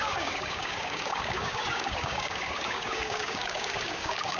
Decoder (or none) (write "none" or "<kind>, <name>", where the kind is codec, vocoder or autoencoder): codec, DAC